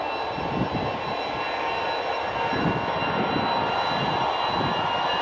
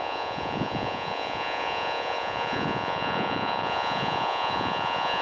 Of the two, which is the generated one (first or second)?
second